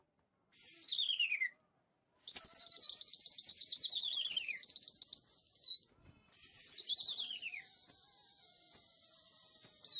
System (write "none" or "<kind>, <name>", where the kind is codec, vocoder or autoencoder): none